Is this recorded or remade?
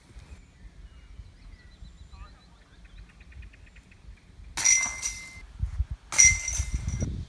recorded